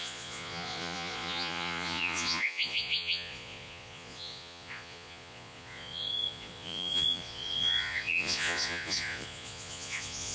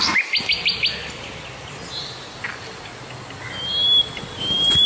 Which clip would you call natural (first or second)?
second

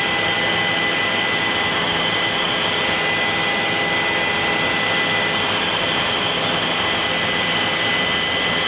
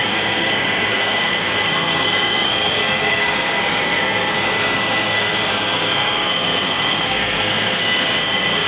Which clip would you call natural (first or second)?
first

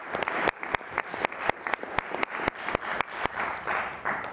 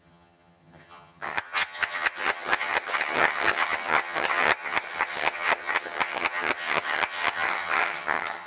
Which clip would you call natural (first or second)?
first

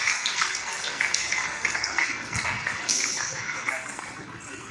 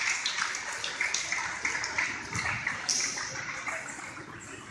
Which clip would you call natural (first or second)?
second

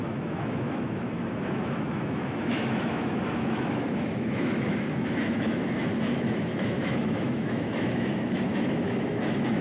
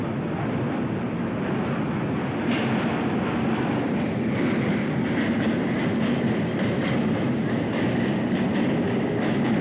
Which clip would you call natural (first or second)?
second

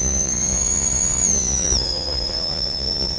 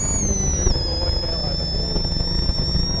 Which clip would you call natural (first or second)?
second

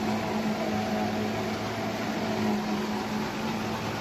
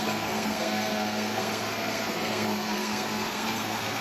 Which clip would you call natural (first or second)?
first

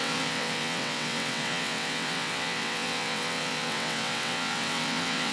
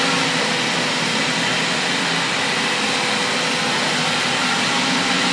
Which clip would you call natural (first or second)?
second